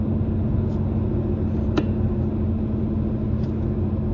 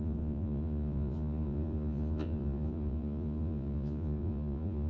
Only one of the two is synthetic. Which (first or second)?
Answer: second